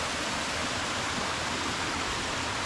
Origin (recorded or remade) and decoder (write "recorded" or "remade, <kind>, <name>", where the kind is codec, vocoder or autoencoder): recorded